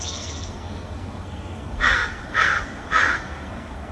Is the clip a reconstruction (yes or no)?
yes